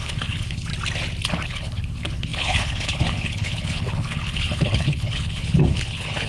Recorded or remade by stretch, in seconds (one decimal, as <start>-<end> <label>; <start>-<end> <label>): 0.0-0.7 remade; 0.7-1.3 recorded; 1.3-6.3 remade